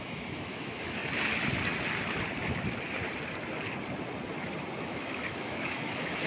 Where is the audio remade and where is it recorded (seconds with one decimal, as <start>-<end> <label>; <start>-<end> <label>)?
0.0-1.0 remade; 1.0-4.8 recorded; 4.8-6.3 remade